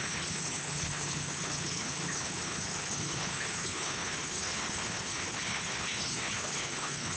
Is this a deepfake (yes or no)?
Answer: yes